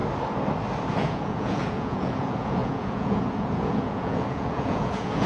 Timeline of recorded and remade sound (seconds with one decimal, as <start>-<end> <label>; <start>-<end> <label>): 0.0-0.9 recorded; 0.9-5.3 remade